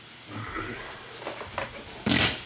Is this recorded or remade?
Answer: remade